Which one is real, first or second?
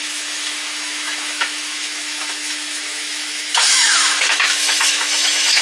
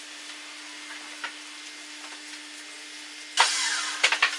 second